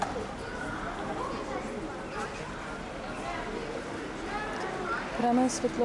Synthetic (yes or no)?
no